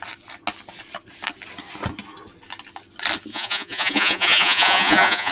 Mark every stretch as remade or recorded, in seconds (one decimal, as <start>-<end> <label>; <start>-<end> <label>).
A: 0.0-3.3 recorded; 3.3-5.3 remade